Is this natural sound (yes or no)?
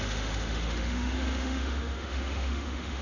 no